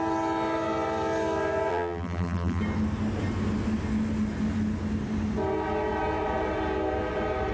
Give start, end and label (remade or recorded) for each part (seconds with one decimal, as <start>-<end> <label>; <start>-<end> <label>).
0.0-1.7 recorded; 1.7-2.6 remade; 2.6-7.5 recorded